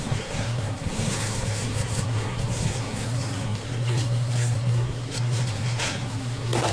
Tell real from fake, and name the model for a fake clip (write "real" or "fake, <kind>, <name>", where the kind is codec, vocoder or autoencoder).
fake, codec, SNAC